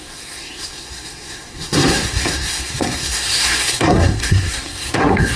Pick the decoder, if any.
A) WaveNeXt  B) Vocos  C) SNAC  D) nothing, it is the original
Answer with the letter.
C